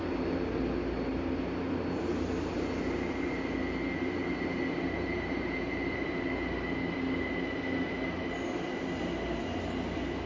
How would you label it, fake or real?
real